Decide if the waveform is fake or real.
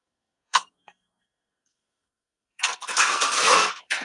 fake